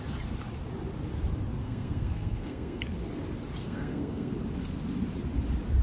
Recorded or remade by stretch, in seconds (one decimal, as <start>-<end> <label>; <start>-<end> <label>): 0.0-1.6 recorded; 1.6-2.8 remade; 2.8-3.6 recorded; 3.6-4.3 remade; 4.3-5.8 recorded